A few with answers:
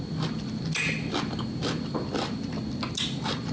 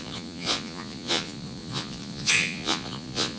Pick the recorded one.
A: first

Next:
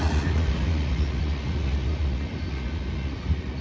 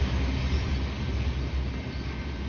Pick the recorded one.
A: second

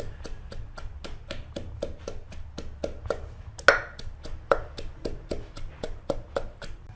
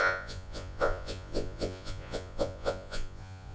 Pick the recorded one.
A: first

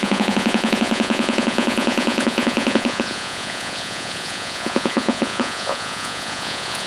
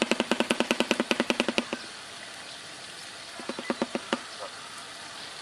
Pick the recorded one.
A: second